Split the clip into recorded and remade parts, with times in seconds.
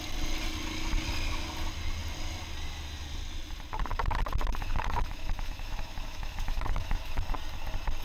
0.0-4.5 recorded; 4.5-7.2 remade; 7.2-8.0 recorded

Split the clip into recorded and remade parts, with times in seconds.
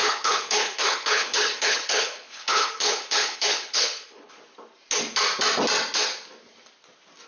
0.0-4.4 remade; 4.4-7.3 recorded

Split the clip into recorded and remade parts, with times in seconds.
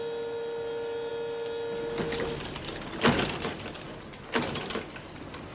0.0-5.5 recorded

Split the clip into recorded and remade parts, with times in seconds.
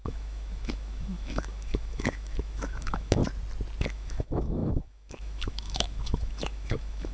0.0-3.2 remade; 3.2-3.8 recorded; 3.8-7.1 remade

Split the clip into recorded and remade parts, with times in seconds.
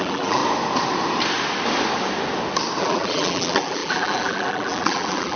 0.0-0.4 remade; 0.4-2.8 recorded; 2.8-5.4 remade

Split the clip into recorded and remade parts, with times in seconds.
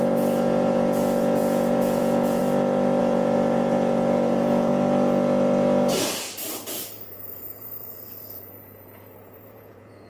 0.0-2.4 remade; 2.4-3.0 recorded; 3.0-4.7 remade; 4.7-6.7 recorded; 6.7-10.1 remade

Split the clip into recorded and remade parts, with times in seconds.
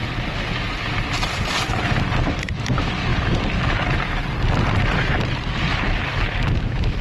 0.0-1.1 recorded; 1.1-3.1 remade; 3.1-5.1 recorded; 5.1-7.0 remade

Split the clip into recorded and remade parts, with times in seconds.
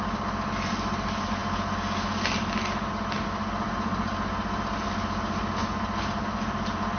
0.0-7.0 recorded